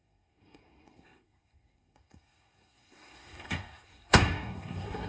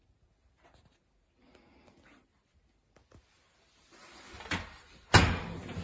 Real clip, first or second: second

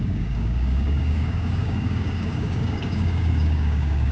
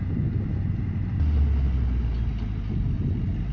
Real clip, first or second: second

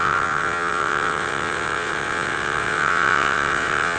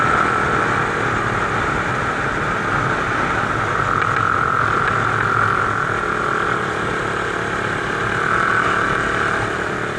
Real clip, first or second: second